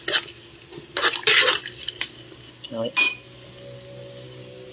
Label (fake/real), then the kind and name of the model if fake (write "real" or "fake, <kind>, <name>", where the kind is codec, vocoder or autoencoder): real